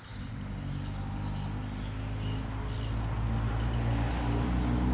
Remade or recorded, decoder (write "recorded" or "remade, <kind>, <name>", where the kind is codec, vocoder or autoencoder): recorded